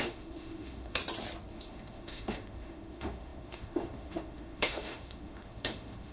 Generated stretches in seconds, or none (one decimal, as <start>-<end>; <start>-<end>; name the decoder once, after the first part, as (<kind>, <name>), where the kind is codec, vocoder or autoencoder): 0.0-1.0 (autoencoder, DAC-VAE); 1.5-6.1

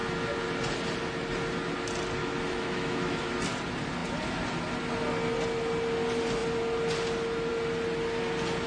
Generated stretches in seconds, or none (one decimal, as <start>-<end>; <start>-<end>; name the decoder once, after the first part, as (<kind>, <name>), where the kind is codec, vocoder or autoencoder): 2.2-3.3 (autoencoder, DAC-VAE)

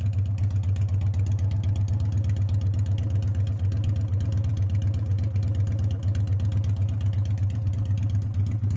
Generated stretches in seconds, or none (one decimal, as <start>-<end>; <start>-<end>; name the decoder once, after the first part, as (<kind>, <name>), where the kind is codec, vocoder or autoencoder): none

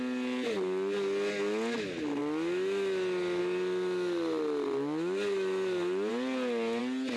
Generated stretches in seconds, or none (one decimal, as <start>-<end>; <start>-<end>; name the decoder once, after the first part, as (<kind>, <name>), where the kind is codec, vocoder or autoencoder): none

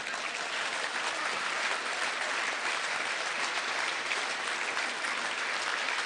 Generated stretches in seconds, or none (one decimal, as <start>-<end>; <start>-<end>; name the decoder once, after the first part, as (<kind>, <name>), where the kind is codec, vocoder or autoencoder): 0.7-4.4 (vocoder, BigVGAN v2)

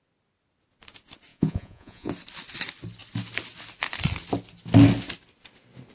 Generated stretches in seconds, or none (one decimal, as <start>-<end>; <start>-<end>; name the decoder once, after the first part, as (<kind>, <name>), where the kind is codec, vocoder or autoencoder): 1.3-2.1 (vocoder, Vocos)